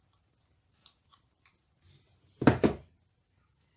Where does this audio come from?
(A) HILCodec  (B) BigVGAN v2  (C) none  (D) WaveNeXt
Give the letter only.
C